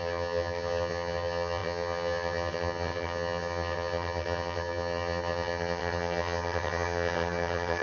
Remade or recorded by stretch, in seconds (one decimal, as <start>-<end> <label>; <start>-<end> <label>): 0.0-7.8 remade